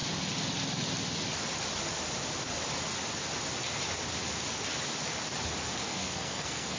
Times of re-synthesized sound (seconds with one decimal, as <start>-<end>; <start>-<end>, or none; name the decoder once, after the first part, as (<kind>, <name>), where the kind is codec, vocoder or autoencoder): 5.9-6.8 (codec, SNAC)